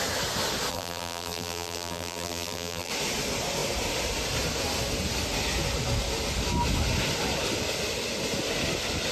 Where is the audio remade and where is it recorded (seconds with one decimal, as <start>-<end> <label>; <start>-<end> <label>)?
0.0-0.7 recorded; 0.7-2.9 remade; 2.9-9.1 recorded